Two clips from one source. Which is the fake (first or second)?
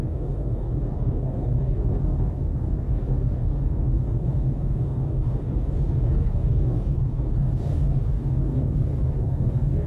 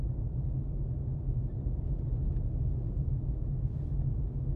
first